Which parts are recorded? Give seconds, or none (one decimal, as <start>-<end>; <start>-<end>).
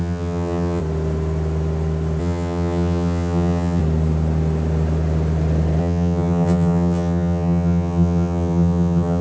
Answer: 0.8-2.2; 3.8-5.8